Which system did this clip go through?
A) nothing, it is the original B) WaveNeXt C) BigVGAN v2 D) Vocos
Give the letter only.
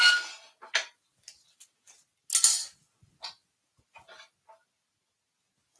A